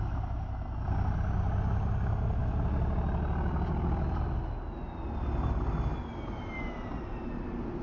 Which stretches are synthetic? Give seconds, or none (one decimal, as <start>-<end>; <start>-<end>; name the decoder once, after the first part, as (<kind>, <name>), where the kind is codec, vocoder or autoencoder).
none